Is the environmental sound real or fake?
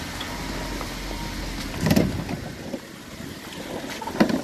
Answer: real